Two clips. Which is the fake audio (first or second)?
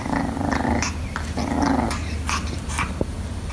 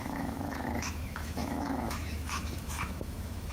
second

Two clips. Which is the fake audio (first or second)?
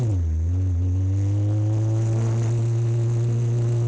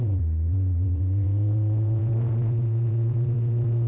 second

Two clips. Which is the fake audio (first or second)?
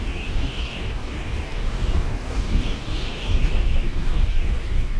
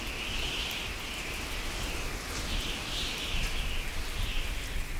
first